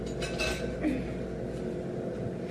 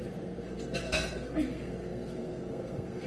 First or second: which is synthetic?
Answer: second